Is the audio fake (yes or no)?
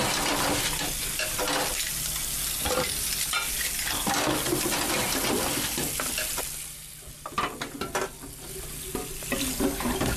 no